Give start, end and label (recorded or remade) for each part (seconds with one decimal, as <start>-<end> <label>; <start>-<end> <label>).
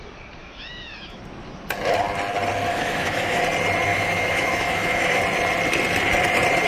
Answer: 0.0-0.4 recorded; 0.4-1.2 remade; 1.2-2.7 recorded; 2.7-3.4 remade; 3.4-3.9 recorded; 3.9-5.2 remade; 5.2-6.7 recorded